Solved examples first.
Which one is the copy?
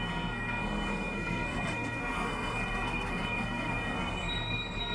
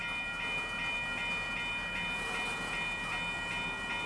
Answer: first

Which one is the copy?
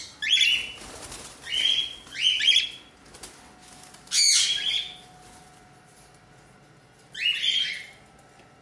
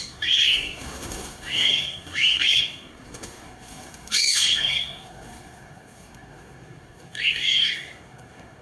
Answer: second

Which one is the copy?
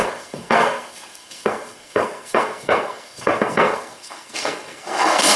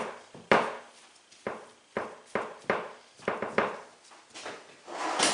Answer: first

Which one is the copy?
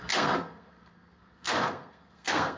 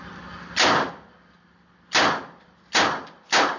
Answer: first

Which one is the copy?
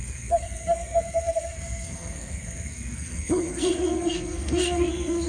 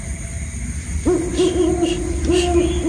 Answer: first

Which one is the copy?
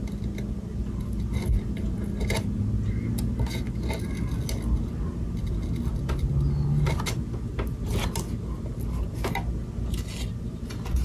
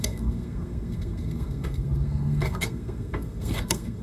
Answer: second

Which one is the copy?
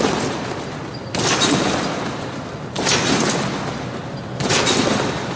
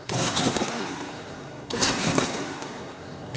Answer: second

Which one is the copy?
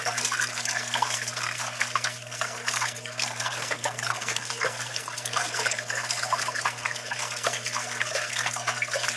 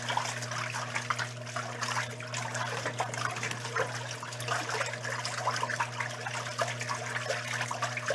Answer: first